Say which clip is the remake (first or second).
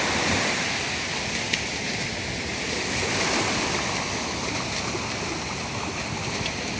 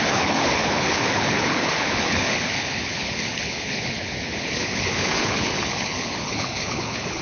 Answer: second